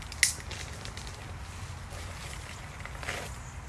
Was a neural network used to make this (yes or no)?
no